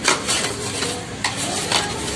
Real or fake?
real